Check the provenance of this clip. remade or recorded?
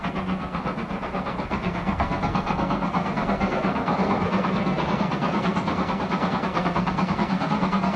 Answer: remade